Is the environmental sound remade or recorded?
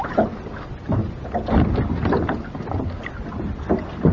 recorded